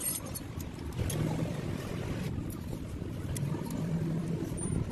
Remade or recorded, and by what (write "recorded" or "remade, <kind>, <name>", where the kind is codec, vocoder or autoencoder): recorded